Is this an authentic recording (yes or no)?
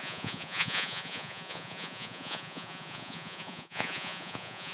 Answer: no